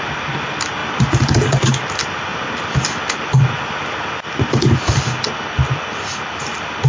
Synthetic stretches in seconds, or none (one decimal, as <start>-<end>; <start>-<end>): none